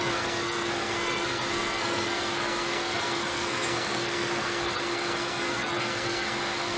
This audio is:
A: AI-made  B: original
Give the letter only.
A